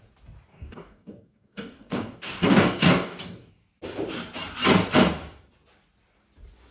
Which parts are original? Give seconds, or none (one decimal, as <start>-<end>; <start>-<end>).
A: 0.0-0.5; 3.5-6.7